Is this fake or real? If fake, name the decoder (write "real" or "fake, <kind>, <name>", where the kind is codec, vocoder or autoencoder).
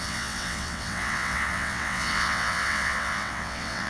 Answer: fake, vocoder, WaveNeXt